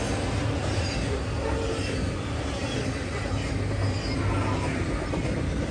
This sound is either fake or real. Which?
real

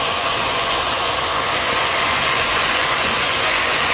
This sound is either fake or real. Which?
fake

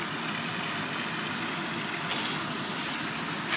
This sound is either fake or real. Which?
real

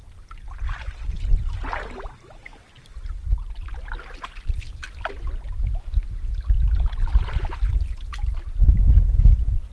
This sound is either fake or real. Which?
real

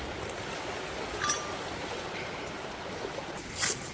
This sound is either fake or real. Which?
real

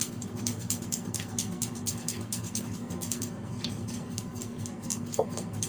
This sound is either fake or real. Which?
fake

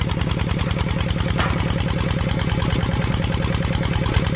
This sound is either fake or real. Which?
real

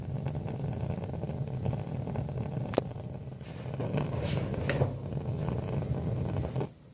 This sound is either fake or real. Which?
real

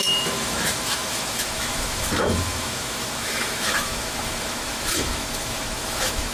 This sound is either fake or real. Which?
fake